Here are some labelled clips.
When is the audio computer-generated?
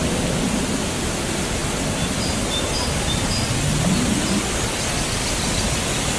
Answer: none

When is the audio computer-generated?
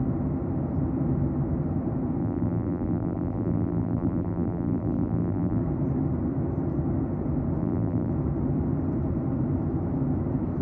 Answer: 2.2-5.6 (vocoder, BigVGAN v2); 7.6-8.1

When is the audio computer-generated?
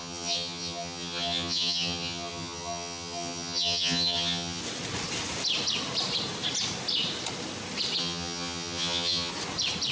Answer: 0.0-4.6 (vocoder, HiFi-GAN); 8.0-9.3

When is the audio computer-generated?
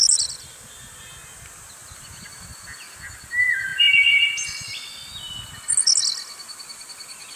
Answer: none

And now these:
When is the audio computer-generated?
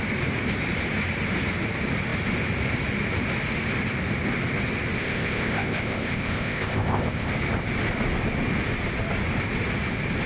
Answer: 5.0-7.3 (codec, ZipCodec)